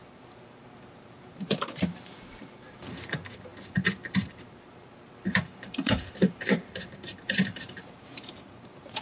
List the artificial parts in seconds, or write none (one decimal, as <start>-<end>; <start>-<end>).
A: 0.0-3.5; 4.3-9.0